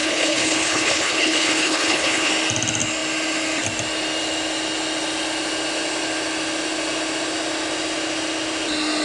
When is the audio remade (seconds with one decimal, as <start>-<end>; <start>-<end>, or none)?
0.0-2.3